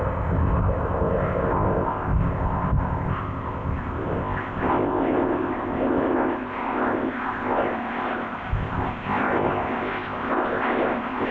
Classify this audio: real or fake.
fake